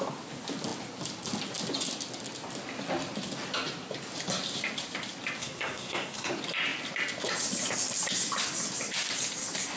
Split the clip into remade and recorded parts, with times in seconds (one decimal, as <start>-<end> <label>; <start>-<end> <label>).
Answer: 0.0-5.4 recorded; 5.4-6.3 remade; 6.3-9.8 recorded

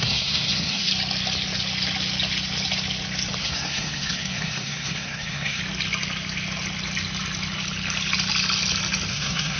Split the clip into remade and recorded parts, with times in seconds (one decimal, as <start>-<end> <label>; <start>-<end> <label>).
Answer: 0.0-0.9 remade; 0.9-3.4 recorded; 3.4-5.6 remade; 5.6-9.1 recorded; 9.1-9.6 remade

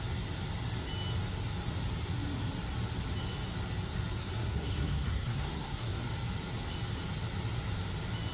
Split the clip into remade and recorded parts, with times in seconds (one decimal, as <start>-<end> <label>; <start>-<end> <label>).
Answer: 0.0-4.2 recorded; 4.2-6.0 remade; 6.0-8.3 recorded

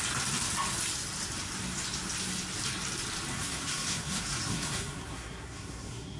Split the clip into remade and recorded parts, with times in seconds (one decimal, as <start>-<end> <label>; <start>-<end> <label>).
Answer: 0.0-3.4 recorded; 3.4-6.2 remade

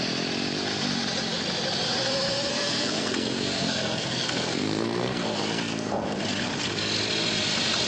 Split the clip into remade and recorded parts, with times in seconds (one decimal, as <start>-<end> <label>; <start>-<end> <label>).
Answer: 0.0-2.5 recorded; 2.5-6.2 remade; 6.2-7.9 recorded

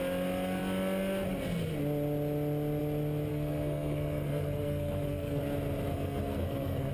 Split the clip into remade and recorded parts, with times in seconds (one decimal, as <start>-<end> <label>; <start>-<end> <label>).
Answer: 0.0-3.3 recorded; 3.3-5.4 remade; 5.4-5.9 recorded; 5.9-6.9 remade